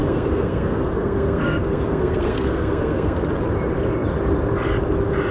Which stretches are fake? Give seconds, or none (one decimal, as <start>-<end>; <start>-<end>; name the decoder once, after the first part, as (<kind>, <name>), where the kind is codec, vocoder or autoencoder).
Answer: 0.0-3.2 (codec, SNAC)